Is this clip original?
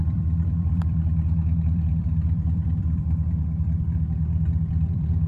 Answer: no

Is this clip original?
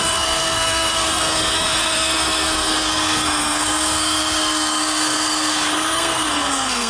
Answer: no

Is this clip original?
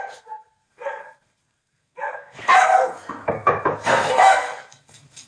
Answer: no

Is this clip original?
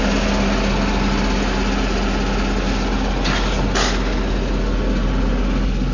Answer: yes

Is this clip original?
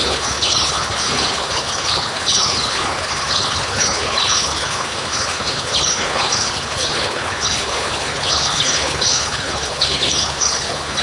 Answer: no